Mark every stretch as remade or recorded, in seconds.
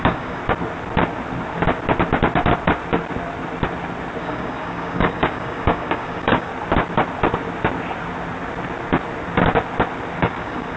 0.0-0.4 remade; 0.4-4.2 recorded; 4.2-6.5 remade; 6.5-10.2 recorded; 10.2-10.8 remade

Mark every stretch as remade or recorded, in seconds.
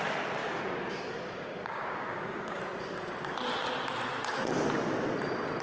0.0-0.4 recorded; 0.4-2.6 remade; 2.6-5.6 recorded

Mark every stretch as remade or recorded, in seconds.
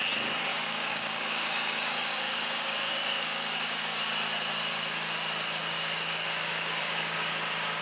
0.0-0.5 recorded; 0.5-4.0 remade; 4.0-5.6 recorded; 5.6-7.3 remade; 7.3-7.8 recorded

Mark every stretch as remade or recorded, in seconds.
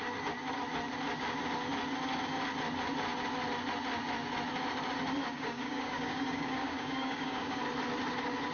0.0-5.2 recorded; 5.2-7.6 remade; 7.6-8.5 recorded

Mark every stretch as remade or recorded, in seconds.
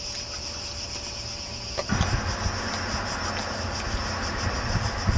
0.0-5.2 recorded